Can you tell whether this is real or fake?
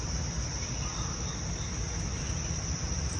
real